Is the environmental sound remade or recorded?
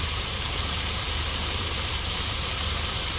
remade